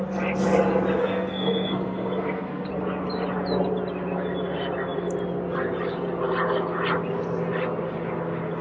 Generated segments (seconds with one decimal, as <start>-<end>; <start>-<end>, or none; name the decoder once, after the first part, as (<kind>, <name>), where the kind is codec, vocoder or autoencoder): 1.0-2.7 (codec, SNAC)

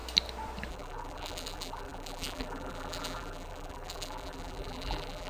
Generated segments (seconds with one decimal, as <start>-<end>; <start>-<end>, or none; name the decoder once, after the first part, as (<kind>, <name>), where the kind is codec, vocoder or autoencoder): 0.7-5.3 (vocoder, BigVGAN v2)

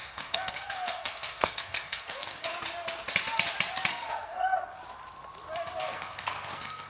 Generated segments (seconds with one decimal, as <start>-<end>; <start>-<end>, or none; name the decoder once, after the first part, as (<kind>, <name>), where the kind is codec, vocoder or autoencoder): 0.0-2.5 (codec, SNAC); 3.9-4.8; 5.8-6.9

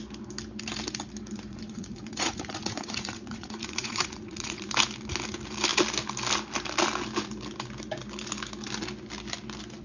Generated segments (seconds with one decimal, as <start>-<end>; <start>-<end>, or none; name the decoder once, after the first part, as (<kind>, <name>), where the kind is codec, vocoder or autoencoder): 1.5-4.7 (vocoder, Vocos)

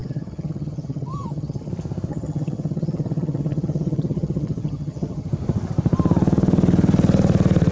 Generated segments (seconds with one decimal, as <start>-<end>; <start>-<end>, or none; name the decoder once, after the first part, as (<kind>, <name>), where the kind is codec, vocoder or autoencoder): 0.0-1.7 (vocoder, HiFi-GAN); 2.1-5.3

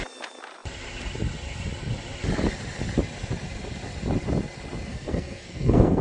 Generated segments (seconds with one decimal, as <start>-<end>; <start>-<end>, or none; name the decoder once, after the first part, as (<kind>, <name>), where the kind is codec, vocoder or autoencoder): 4.9-6.0 (codec, SNAC)

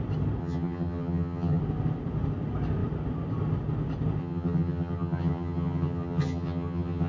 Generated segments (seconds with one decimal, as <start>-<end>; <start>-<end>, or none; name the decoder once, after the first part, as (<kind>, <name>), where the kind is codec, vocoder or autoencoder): 0.4-1.6 (vocoder, HiFi-GAN); 4.2-7.1